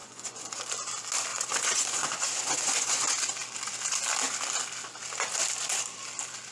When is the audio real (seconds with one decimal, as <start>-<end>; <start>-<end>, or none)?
0.6-1.3; 3.1-6.5